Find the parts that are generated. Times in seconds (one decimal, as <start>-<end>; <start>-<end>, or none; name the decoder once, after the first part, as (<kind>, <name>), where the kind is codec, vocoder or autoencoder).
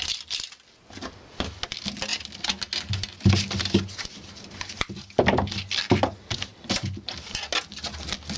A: none